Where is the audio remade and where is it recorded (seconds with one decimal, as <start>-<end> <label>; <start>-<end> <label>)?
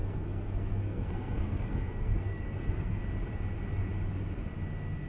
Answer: 0.0-3.0 remade; 3.0-5.1 recorded